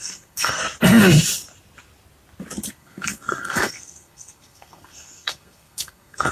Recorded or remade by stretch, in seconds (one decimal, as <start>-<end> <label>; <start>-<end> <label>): 0.0-0.6 remade; 0.6-2.7 recorded; 2.7-6.3 remade